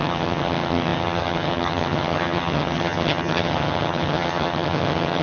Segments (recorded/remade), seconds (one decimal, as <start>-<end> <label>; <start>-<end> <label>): 0.0-5.2 remade